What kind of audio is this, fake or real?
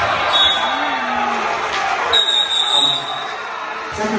real